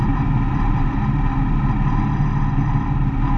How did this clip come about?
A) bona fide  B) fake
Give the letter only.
A